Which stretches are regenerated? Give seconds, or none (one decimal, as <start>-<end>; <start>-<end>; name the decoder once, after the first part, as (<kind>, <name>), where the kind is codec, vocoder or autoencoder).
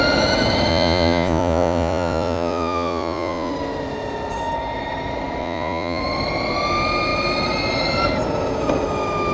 0.7-3.5 (vocoder, Vocos); 5.4-6.0